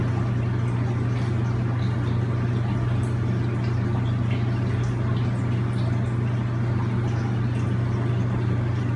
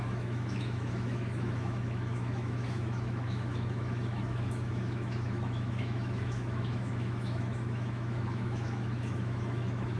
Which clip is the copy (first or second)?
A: second